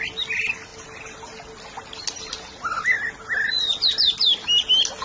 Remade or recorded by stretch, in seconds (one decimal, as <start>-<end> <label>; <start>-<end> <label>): 0.0-5.0 recorded